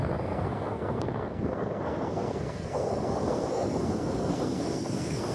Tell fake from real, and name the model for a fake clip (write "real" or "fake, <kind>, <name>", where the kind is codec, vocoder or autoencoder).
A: fake, codec, SNAC